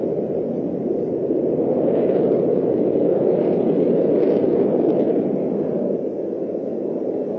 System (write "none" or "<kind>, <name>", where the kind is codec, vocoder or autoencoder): none